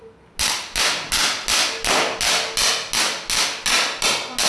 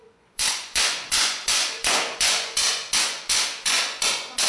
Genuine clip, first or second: first